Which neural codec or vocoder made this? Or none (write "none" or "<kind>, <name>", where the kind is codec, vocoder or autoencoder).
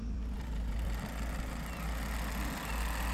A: none